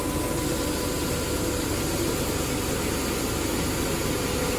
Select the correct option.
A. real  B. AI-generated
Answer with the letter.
A